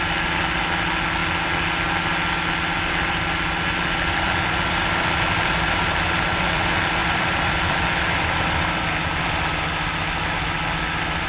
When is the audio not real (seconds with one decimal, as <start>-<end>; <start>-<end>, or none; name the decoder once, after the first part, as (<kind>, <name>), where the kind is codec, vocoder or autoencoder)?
7.0-8.8 (vocoder, BigVGAN v2)